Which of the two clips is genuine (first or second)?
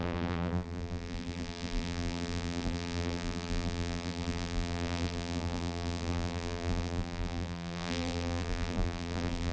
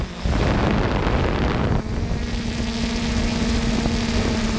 second